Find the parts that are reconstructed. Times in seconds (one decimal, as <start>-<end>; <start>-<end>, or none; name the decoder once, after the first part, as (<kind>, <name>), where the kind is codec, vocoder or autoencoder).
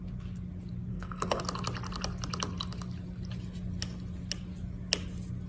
0.9-1.4 (codec, SNAC)